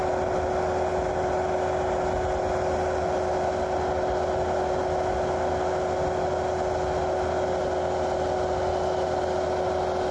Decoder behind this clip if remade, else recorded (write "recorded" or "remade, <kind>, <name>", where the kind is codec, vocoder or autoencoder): recorded